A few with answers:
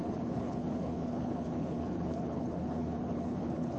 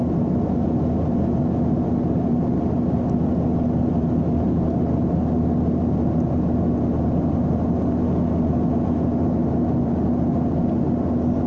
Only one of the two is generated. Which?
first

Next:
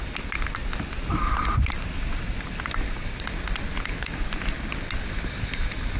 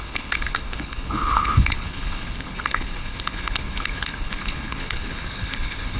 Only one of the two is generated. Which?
second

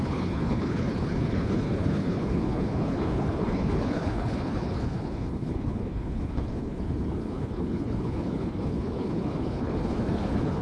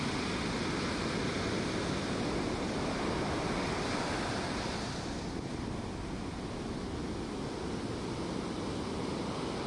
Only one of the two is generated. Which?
first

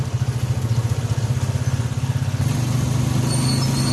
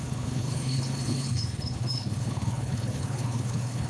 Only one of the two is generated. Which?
second